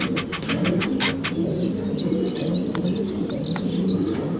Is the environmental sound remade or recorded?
recorded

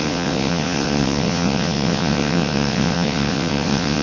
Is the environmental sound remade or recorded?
remade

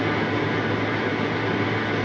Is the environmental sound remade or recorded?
recorded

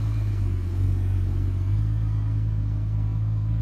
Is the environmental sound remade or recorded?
remade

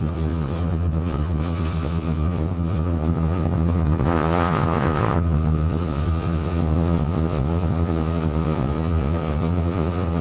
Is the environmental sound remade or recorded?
remade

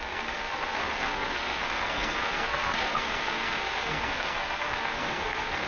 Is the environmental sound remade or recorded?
remade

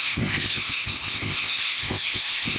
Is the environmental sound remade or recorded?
remade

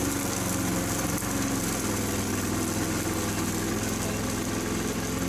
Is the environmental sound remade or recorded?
recorded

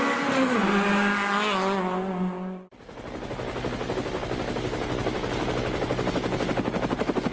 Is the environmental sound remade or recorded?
recorded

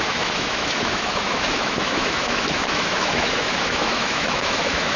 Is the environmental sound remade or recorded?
remade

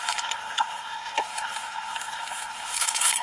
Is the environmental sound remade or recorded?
remade